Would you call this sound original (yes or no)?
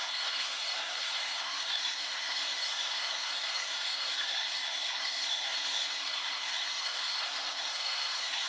no